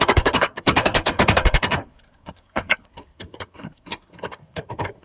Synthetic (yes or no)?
yes